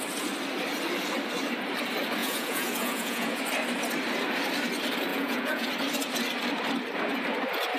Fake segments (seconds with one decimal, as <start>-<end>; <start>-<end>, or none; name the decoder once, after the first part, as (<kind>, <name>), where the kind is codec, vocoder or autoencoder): 2.2-3.4 (vocoder, Vocos); 5.1-5.7